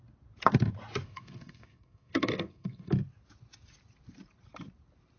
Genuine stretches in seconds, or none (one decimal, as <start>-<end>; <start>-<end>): 0.0-1.0; 2.9-5.2